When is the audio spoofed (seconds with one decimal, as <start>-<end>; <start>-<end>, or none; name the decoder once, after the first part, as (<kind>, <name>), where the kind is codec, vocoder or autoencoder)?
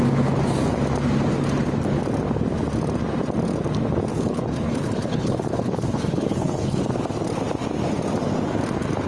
4.1-6.8 (codec, HILCodec)